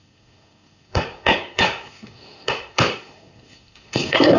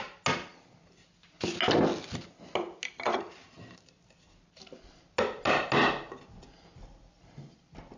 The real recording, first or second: second